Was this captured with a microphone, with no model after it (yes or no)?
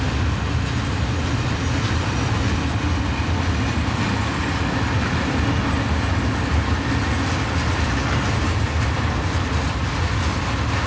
yes